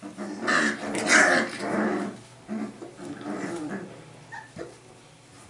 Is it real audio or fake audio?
real